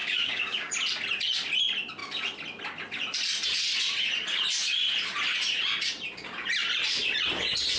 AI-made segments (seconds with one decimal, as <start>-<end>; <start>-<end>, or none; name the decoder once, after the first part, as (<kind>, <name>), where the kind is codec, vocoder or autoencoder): 0.0-0.7 (codec, DAC)